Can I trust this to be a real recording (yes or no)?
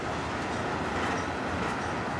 yes